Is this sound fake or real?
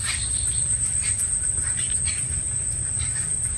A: real